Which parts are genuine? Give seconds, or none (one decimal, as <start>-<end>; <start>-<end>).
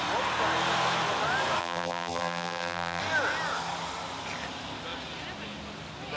0.0-1.6; 3.0-6.2